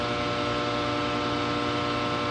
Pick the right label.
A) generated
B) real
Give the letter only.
B